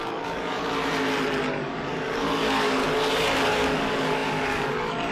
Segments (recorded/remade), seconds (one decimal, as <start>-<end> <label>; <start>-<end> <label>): 0.0-0.6 remade; 0.6-1.4 recorded; 1.4-2.8 remade; 2.8-3.4 recorded; 3.4-5.1 remade